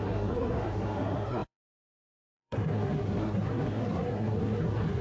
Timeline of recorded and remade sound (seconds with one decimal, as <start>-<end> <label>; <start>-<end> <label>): 0.0-5.0 remade